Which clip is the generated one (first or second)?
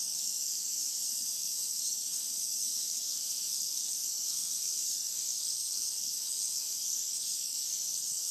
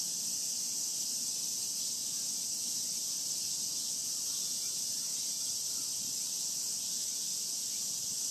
first